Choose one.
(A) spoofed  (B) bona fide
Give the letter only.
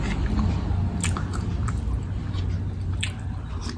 B